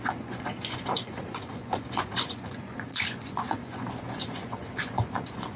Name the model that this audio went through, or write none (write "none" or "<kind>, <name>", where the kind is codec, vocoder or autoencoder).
vocoder, Vocos